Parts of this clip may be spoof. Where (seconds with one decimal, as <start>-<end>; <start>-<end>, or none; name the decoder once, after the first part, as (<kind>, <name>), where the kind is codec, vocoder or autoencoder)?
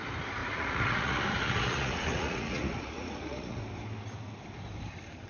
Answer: 0.4-3.6 (vocoder, Vocos)